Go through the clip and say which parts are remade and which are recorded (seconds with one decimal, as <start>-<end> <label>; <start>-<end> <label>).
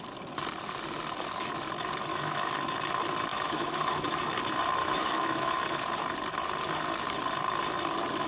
0.0-2.1 recorded; 2.1-2.6 remade; 2.6-3.3 recorded; 3.3-4.2 remade; 4.2-4.8 recorded; 4.8-5.6 remade; 5.6-8.3 recorded